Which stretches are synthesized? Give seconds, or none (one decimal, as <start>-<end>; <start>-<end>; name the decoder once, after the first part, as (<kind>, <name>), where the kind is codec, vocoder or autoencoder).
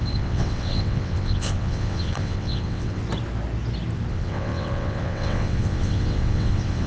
0.0-3.0 (vocoder, WaveNeXt); 4.1-6.9